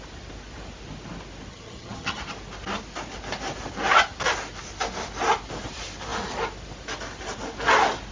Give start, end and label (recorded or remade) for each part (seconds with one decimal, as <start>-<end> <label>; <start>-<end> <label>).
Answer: 0.0-1.5 recorded; 1.5-2.2 remade; 2.2-8.1 recorded